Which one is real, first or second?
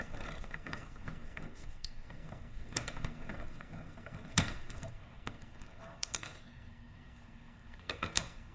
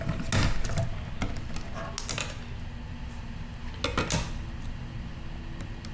second